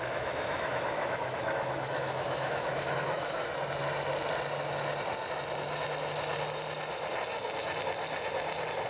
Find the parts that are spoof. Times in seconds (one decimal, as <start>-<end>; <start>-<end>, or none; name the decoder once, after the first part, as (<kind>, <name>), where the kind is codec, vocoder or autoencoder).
0.0-3.5 (autoencoder, DAC-VAE)